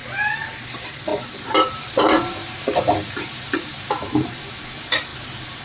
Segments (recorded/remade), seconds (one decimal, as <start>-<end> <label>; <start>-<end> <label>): 0.0-0.6 recorded; 0.6-5.6 remade